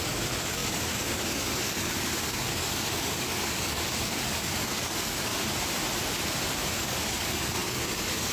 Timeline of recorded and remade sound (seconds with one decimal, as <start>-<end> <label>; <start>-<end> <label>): 0.0-5.3 remade; 5.3-6.7 recorded; 6.7-8.3 remade